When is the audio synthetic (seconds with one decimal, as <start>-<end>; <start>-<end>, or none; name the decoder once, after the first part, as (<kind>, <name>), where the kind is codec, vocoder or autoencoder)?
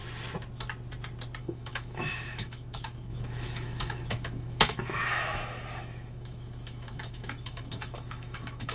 1.4-8.7 (autoencoder, DAC-VAE)